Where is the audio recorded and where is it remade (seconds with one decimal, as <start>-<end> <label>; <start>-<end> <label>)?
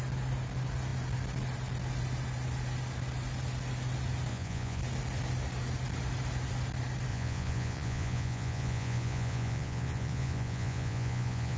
0.0-4.3 recorded; 4.3-4.8 remade; 4.8-7.1 recorded; 7.1-11.6 remade